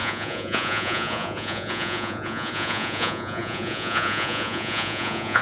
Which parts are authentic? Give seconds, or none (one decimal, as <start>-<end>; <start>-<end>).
none